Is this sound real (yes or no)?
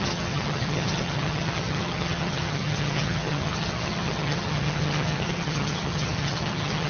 no